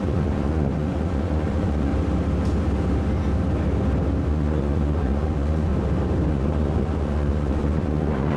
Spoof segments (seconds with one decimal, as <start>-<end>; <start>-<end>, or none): 0.0-1.9; 4.3-5.7; 6.3-8.4